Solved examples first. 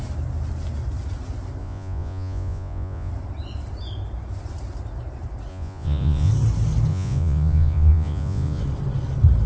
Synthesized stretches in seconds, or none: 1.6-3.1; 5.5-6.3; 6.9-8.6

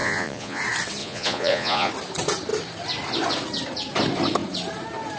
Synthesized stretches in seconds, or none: 0.0-0.6; 1.0-1.9

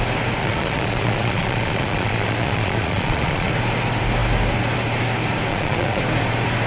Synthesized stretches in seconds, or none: 0.4-3.5; 5.5-6.0

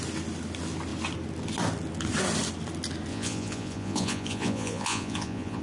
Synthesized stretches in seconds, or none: 3.1-5.6

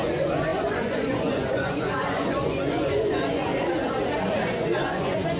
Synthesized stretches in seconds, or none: 0.0-3.5; 4.2-5.4

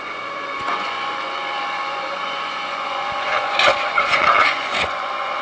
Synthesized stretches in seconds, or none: 0.0-5.4

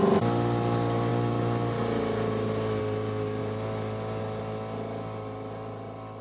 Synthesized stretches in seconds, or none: none

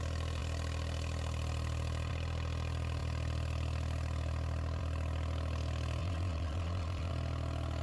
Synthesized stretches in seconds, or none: 6.0-7.1